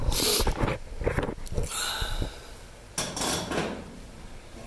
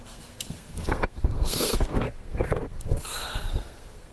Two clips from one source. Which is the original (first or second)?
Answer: first